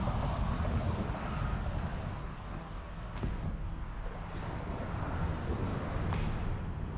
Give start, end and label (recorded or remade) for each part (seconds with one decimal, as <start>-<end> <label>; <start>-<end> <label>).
0.0-2.2 recorded; 2.2-3.8 remade; 3.8-7.0 recorded

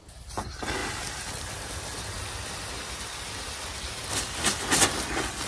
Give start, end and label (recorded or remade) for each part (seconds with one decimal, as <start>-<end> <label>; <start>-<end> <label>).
0.0-5.5 recorded

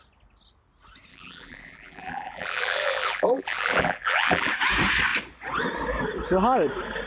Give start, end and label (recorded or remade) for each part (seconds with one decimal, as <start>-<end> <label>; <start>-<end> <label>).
0.0-1.1 recorded; 1.1-4.5 remade; 4.5-7.1 recorded

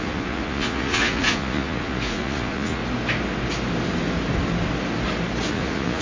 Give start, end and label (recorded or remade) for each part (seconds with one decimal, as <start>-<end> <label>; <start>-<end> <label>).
0.0-2.8 remade; 2.8-5.5 recorded; 5.5-6.0 remade

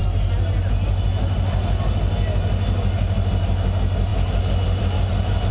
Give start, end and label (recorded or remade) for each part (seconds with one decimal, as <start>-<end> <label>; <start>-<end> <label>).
0.0-5.5 recorded